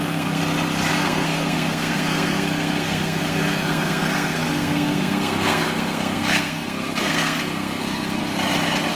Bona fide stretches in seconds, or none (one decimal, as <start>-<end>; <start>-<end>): 0.4-0.9; 8.2-8.9